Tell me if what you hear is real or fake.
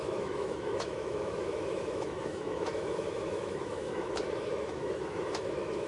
fake